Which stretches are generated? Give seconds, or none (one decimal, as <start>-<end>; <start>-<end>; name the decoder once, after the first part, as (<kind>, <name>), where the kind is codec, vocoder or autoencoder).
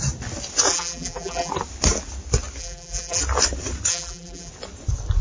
0.7-1.5 (vocoder, BigVGAN v2); 2.6-3.2; 3.9-4.5